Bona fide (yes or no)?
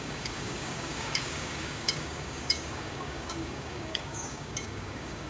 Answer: no